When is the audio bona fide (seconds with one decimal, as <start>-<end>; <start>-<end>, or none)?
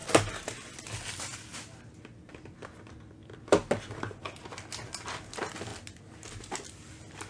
0.0-7.3